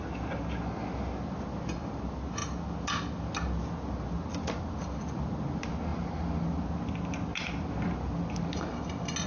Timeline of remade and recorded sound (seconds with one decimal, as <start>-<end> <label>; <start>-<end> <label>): 0.0-9.3 recorded